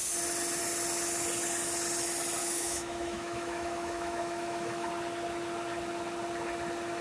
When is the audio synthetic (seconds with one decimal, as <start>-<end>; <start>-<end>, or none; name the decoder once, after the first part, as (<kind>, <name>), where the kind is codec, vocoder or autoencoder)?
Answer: 2.4-4.9 (autoencoder, DAC-VAE)